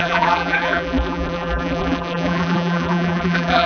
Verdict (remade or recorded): remade